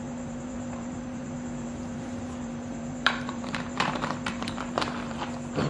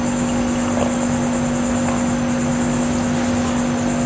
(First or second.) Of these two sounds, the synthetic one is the first